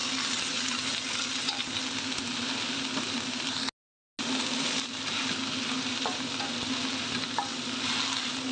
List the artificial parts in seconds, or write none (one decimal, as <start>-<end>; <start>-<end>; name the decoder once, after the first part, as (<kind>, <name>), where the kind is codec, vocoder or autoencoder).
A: none